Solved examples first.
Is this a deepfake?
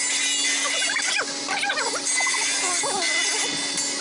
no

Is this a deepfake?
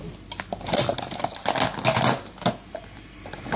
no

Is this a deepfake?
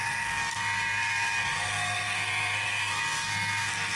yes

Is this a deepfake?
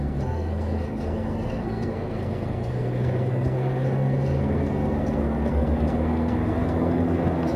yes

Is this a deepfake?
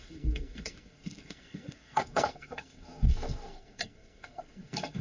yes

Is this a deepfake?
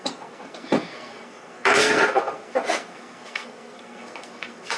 yes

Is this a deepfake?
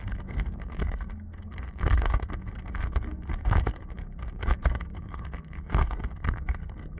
yes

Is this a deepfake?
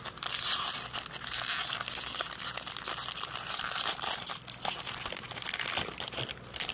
no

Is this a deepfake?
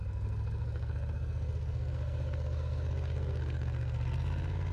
yes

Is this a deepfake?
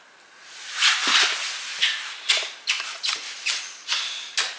no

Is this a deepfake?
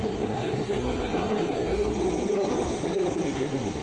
yes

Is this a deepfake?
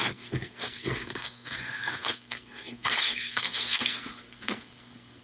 yes